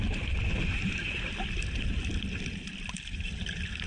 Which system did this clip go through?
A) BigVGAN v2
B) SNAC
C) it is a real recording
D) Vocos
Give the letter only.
C